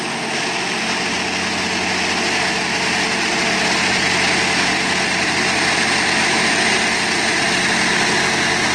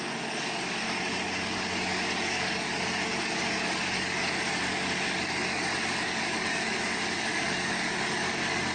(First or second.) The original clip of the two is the first